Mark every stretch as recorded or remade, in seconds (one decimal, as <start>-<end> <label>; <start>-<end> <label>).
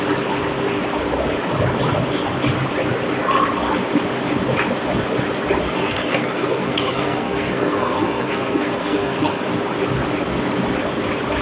0.0-5.8 recorded; 5.8-9.5 remade; 9.5-11.4 recorded